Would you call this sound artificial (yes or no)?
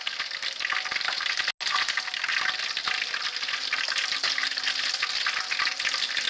no